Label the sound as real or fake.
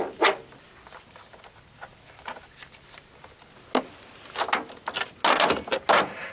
real